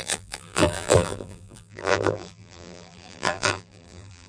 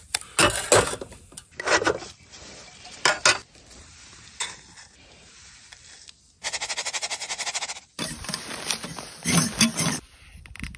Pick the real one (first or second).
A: second